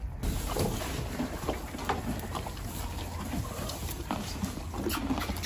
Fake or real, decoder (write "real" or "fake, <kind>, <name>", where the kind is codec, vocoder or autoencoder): real